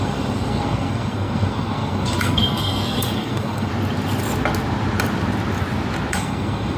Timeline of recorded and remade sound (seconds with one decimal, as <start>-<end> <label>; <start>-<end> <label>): 0.0-3.7 remade; 3.7-6.1 recorded; 6.1-6.8 remade